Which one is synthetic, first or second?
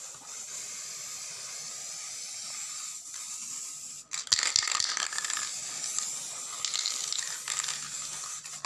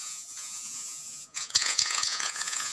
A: second